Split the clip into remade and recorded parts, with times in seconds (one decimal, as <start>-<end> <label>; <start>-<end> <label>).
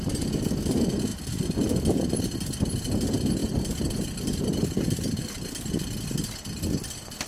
0.0-1.1 recorded; 1.1-2.2 remade; 2.2-3.4 recorded; 3.4-5.7 remade; 5.7-7.3 recorded